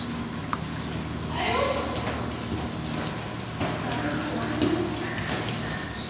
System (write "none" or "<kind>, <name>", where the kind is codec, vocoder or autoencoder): none